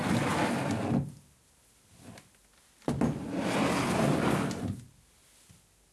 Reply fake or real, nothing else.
real